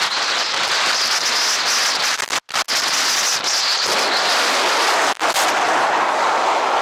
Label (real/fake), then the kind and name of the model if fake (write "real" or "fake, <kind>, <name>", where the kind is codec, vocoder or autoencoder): real